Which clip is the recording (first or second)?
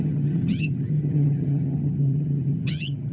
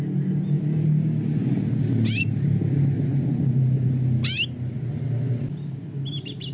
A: second